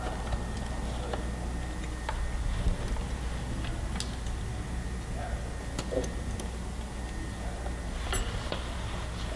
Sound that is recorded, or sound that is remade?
recorded